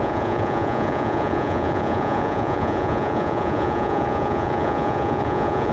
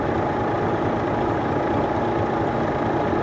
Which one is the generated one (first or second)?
first